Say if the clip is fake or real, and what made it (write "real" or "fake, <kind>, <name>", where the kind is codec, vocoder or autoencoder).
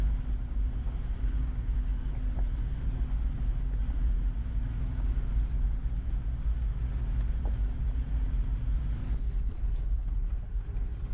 real